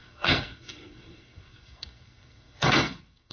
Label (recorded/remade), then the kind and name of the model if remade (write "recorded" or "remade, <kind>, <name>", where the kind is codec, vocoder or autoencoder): remade, codec, SNAC